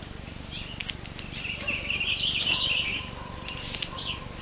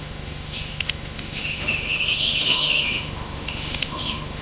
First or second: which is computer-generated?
second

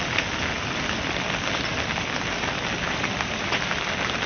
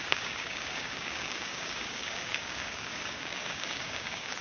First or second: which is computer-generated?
second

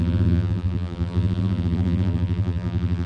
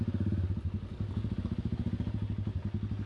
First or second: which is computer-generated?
first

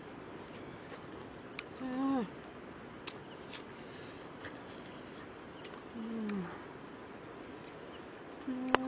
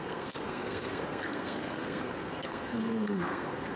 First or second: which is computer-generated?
second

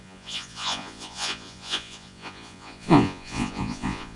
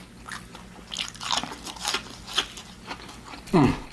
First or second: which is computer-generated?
first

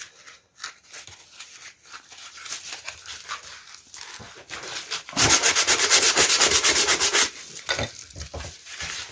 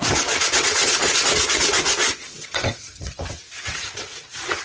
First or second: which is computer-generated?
second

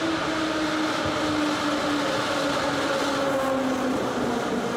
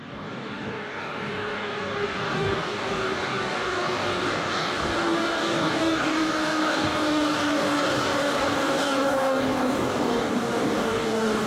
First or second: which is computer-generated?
second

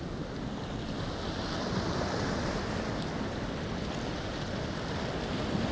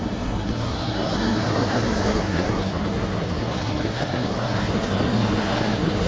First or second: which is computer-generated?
second